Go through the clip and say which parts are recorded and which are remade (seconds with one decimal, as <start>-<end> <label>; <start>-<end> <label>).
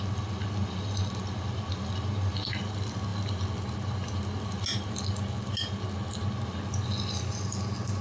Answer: 0.0-8.0 recorded